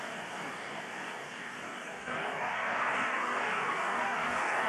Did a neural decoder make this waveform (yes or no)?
yes